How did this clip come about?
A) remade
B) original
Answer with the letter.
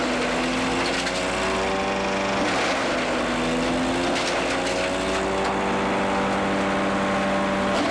B